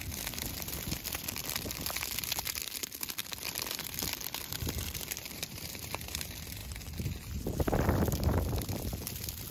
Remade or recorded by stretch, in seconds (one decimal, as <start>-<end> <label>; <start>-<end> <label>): 0.0-1.4 remade; 1.4-2.8 recorded; 2.8-6.6 remade; 6.6-7.4 recorded; 7.4-9.5 remade